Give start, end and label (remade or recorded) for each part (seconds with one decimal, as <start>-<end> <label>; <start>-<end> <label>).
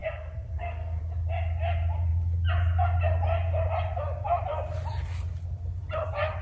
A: 0.0-1.0 remade; 1.0-6.4 recorded